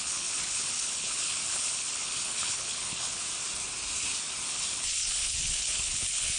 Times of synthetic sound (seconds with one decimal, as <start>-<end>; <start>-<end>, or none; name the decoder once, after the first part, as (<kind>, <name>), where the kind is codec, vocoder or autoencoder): 0.0-3.2 (codec, HILCodec); 4.5-6.4